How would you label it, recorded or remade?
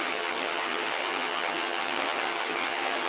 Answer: remade